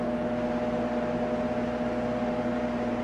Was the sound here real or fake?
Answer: real